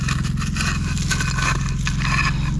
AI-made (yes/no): no